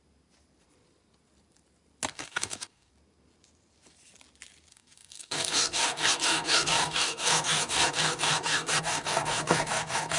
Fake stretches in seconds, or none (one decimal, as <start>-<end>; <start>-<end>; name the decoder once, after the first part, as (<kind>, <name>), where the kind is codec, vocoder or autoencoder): 2.1-2.9 (codec, DAC); 4.7-10.2